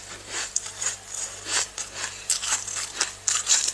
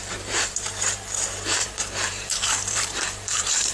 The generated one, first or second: second